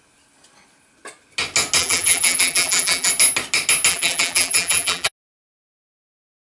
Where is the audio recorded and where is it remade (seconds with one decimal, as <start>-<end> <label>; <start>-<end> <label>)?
0.0-1.8 recorded; 1.8-3.1 remade; 3.1-3.9 recorded; 3.9-5.1 remade; 5.1-6.4 recorded